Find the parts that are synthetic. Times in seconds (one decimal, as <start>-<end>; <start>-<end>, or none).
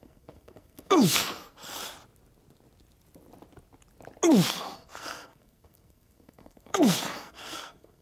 0.0-1.8; 4.5-8.0